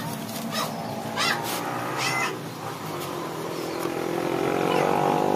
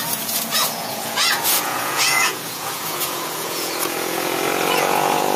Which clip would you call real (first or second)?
first